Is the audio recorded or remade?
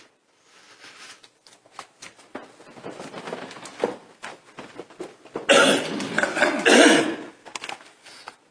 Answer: recorded